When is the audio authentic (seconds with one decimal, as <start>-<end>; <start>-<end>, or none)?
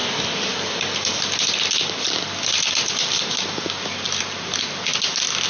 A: 0.0-5.5